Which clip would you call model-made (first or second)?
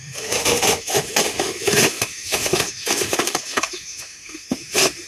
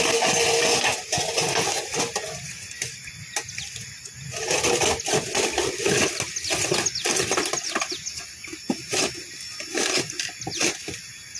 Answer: first